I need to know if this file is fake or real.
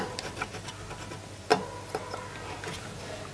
real